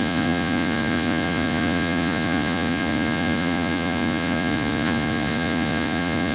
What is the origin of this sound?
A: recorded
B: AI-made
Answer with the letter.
B